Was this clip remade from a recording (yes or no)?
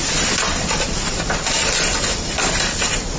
no